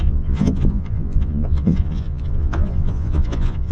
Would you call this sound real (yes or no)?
no